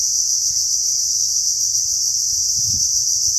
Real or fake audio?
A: fake